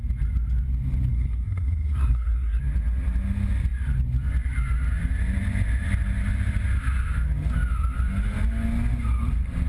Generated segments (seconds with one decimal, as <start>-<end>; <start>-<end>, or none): 1.1-2.6